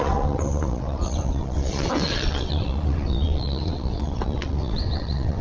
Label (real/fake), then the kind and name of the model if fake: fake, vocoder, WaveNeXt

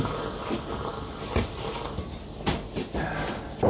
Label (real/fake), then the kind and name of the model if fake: real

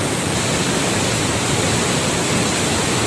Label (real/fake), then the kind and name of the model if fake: real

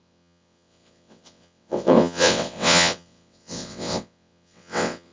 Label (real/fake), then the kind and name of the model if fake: fake, vocoder, WaveNeXt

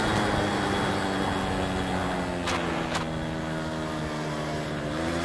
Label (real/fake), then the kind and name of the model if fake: real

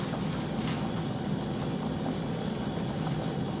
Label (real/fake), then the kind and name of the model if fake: real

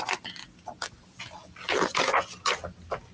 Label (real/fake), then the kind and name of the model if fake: real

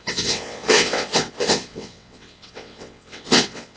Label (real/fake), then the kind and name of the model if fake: fake, vocoder, WaveNeXt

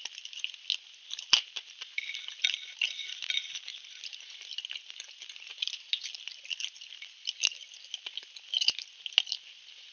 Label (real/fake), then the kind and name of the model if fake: real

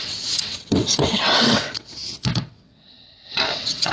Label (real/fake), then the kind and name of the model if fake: fake, vocoder, WaveNeXt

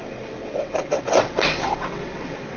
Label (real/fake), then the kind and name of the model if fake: fake, vocoder, WaveNeXt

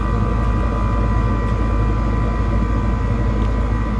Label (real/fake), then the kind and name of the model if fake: real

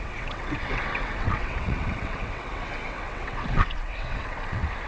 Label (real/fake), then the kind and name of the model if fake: fake, vocoder, WaveNeXt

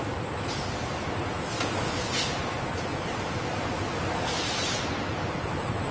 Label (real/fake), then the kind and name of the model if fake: real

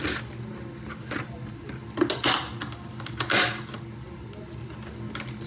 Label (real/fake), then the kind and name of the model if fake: real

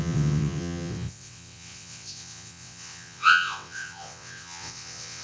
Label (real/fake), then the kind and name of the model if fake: fake, vocoder, WaveNeXt